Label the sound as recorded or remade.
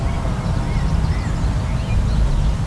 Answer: recorded